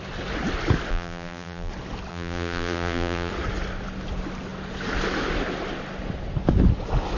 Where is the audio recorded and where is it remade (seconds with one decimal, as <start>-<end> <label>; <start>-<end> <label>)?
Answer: 0.0-0.9 recorded; 0.9-1.7 remade; 1.7-2.1 recorded; 2.1-3.3 remade; 3.3-7.2 recorded